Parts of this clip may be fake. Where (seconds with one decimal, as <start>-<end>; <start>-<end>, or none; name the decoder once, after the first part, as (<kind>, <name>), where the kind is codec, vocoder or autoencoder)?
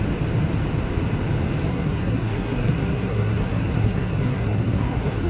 1.7-5.3 (codec, SNAC)